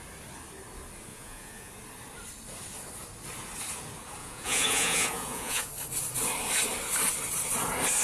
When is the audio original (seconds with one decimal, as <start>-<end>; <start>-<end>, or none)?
0.0-1.1; 1.7-4.2; 5.7-8.0